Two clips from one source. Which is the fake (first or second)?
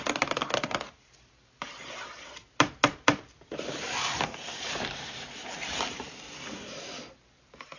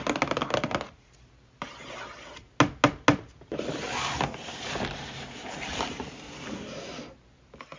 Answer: first